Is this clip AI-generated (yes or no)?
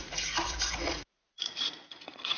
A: yes